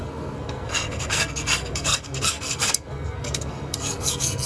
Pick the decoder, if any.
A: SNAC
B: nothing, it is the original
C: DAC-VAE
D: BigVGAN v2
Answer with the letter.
A